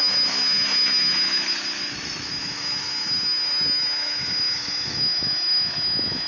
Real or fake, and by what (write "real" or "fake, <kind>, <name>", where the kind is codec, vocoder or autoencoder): fake, autoencoder, DAC-VAE